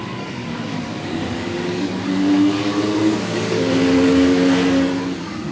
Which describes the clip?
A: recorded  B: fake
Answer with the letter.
B